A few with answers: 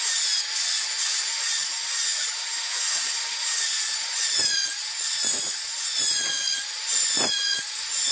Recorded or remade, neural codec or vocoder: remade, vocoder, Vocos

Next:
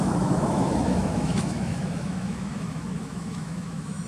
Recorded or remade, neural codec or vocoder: remade, autoencoder, DAC-VAE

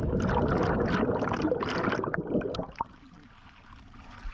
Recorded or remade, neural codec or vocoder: recorded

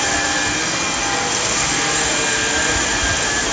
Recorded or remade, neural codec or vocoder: recorded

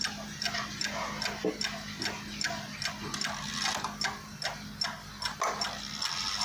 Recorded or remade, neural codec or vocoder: recorded